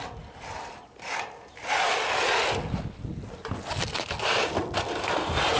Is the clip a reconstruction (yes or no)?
no